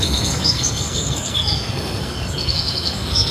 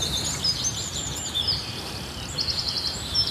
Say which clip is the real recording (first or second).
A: second